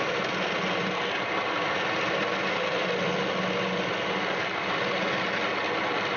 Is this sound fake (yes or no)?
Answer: no